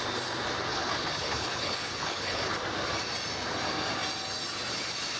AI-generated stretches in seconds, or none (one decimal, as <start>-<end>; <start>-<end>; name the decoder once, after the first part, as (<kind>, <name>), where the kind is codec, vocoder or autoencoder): 0.7-2.5 (codec, HILCodec)